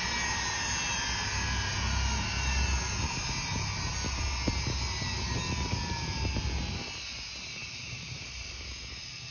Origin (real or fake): real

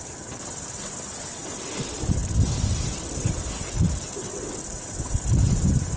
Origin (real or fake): real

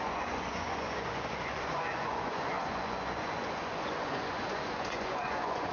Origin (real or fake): fake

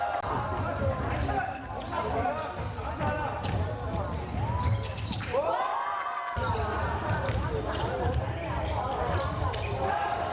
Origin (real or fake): real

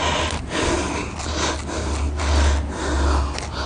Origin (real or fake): real